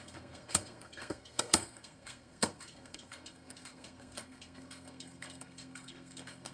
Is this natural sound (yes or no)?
no